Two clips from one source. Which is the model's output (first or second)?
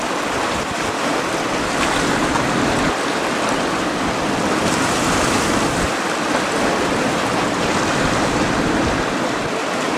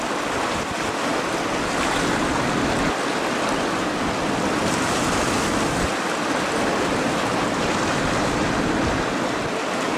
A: first